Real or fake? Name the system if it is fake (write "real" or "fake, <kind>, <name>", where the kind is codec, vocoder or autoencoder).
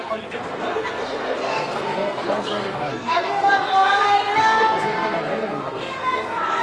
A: fake, codec, SNAC